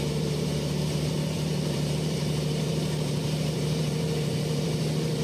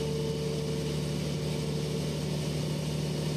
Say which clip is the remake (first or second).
first